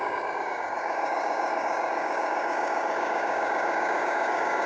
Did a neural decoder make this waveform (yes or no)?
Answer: yes